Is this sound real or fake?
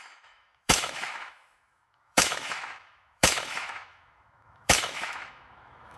fake